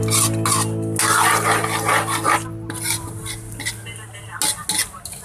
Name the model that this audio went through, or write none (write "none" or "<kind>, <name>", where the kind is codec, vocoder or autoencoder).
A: none